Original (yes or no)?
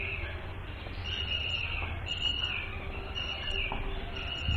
yes